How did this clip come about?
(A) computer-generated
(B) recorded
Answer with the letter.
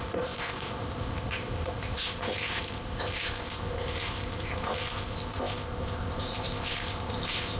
A